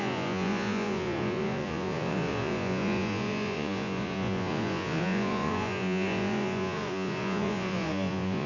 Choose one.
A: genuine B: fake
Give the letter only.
B